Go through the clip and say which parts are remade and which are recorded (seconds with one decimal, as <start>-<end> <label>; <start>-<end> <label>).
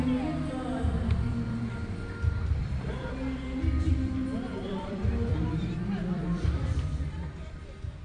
0.0-2.6 recorded; 2.6-3.1 remade; 3.1-4.5 recorded; 4.5-8.0 remade